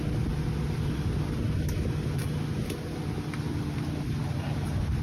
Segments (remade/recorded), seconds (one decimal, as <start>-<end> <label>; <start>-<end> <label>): 0.0-5.0 recorded